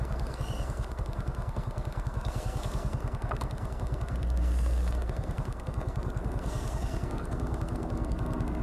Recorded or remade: remade